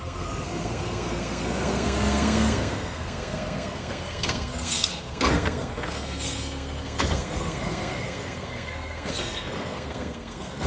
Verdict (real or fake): fake